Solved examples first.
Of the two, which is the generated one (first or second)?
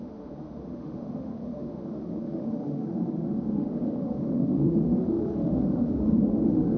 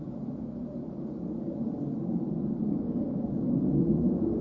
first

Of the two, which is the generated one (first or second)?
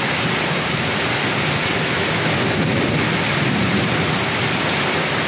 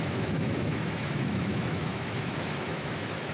second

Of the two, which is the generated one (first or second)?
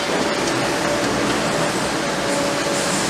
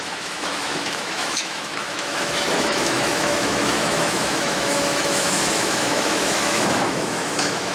second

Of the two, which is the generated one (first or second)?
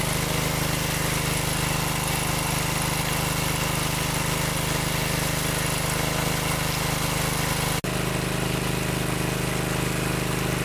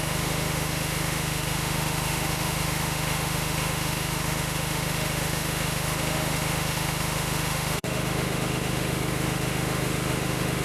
second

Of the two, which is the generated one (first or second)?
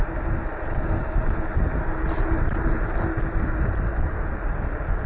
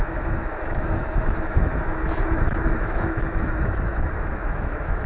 second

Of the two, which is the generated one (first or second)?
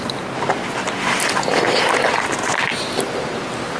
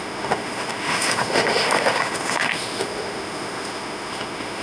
second